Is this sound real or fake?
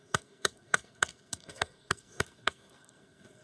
fake